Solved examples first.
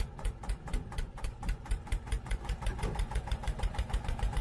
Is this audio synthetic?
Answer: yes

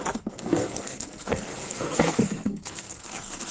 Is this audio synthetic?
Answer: yes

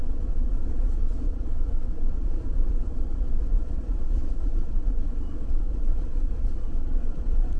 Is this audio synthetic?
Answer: yes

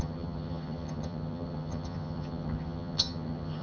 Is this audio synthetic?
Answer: yes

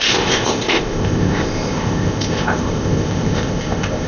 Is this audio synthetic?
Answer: yes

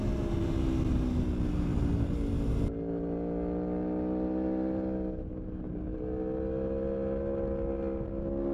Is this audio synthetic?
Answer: no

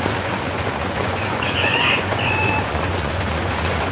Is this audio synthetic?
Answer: yes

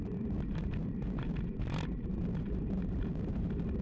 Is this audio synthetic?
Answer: yes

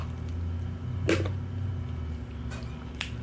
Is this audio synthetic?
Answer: no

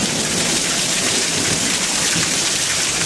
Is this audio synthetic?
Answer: yes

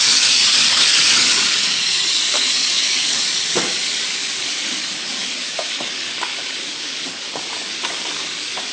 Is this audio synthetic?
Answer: yes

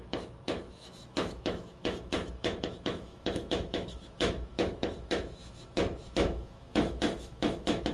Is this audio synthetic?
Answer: yes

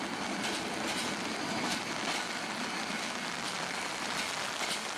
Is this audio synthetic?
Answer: no